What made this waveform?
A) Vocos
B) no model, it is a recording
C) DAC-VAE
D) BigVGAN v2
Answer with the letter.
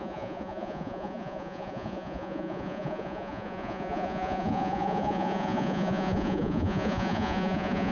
A